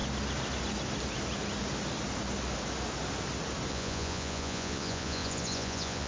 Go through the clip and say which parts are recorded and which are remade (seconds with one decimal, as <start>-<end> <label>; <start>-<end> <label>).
0.0-3.7 recorded; 3.7-6.1 remade